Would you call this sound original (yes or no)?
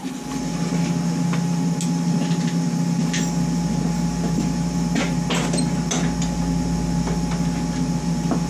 yes